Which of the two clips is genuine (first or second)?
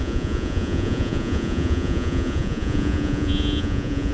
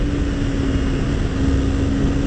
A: second